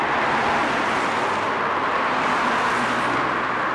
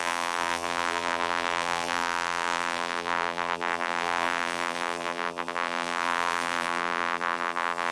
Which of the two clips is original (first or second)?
first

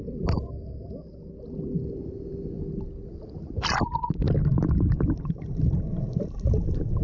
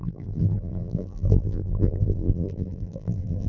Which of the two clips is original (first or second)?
first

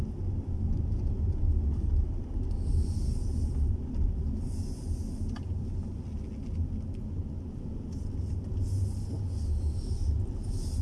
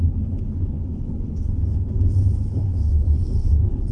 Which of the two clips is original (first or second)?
first